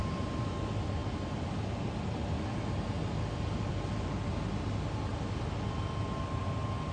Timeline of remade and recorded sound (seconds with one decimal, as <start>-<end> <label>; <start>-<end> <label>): 0.0-0.5 remade; 0.5-6.9 recorded